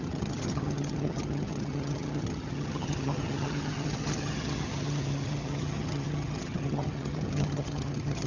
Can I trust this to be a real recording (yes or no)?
no